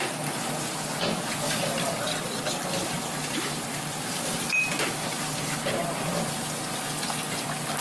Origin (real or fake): real